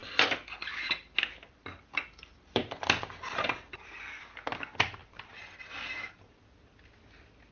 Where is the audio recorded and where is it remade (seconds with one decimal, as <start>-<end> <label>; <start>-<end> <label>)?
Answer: 0.0-7.5 recorded